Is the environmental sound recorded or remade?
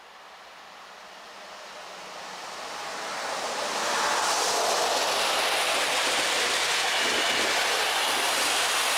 recorded